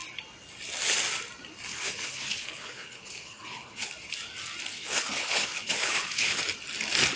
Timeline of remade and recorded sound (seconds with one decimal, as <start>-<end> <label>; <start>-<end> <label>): 0.0-1.7 recorded; 1.7-3.9 remade; 3.9-4.7 recorded; 4.7-6.4 remade; 6.4-7.2 recorded